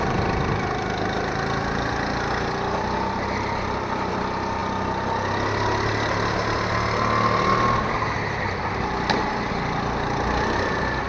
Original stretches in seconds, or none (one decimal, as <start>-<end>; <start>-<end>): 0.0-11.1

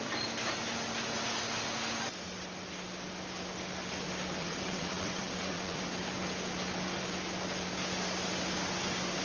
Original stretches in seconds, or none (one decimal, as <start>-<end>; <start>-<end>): 0.0-4.4; 5.8-9.2

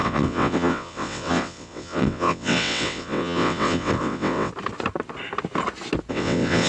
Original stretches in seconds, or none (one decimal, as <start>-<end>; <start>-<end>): 4.5-6.1

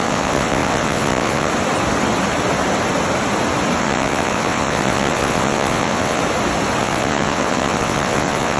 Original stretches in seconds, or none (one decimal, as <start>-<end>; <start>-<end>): 1.5-3.8; 6.2-6.8